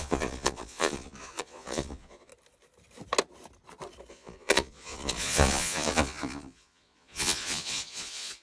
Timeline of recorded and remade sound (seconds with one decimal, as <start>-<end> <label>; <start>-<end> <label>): 0.0-2.3 remade; 2.3-4.1 recorded; 4.1-8.4 remade